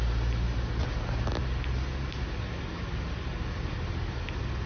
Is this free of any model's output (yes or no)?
yes